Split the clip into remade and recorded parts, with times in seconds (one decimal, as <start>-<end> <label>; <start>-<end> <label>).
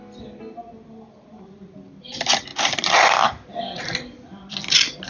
0.0-2.5 recorded; 2.5-3.5 remade; 3.5-4.3 recorded; 4.3-5.1 remade